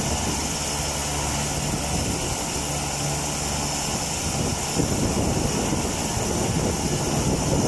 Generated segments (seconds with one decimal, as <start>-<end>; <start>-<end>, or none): none